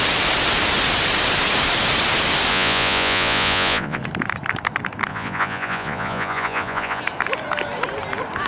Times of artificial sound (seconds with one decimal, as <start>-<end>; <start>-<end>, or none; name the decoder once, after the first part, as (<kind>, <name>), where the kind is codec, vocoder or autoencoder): 2.5-4.0 (vocoder, Vocos); 5.1-7.0